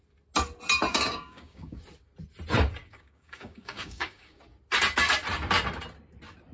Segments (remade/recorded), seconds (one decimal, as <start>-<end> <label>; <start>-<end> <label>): 0.0-0.9 recorded; 0.9-1.8 remade; 1.8-2.8 recorded; 2.8-4.4 remade; 4.4-6.5 recorded